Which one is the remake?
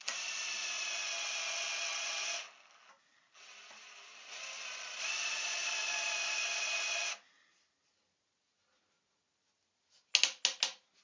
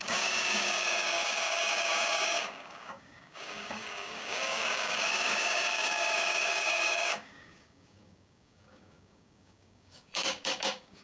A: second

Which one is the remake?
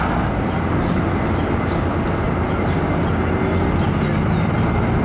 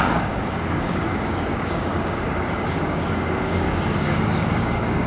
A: second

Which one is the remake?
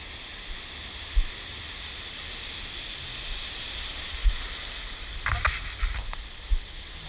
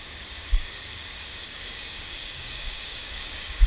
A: second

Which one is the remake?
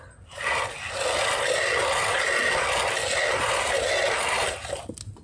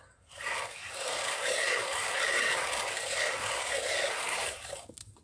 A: second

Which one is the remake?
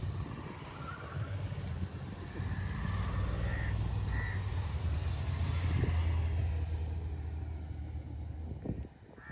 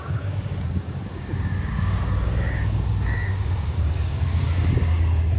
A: second